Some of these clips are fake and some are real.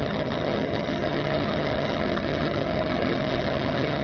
fake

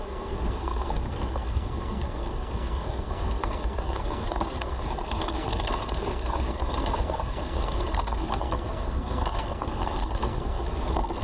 fake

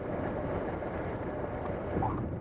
fake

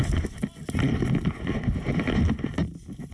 real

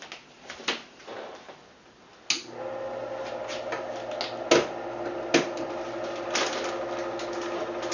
real